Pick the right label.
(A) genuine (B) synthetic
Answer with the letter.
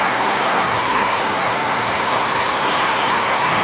B